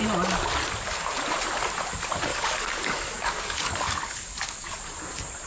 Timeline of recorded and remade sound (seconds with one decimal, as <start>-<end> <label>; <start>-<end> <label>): 0.0-2.3 recorded; 2.3-4.9 remade; 4.9-5.5 recorded